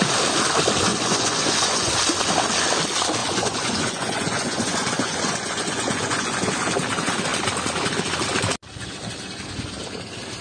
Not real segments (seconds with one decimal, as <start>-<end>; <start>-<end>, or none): 0.9-1.9; 3.2-6.5